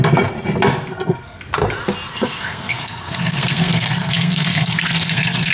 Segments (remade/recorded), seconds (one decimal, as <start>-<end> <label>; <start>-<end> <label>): 0.0-0.9 recorded; 0.9-1.4 remade; 1.4-2.1 recorded; 2.1-5.5 remade